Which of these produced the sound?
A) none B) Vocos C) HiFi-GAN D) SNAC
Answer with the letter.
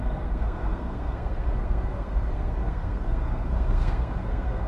D